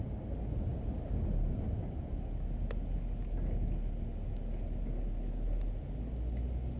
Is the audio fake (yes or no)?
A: no